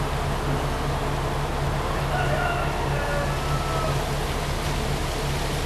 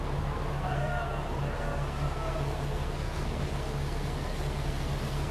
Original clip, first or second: first